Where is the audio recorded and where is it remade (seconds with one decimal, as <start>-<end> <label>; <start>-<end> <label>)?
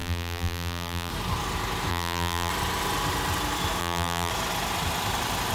0.0-1.1 remade; 1.1-1.9 recorded; 1.9-2.5 remade; 2.5-3.8 recorded; 3.8-4.3 remade; 4.3-5.5 recorded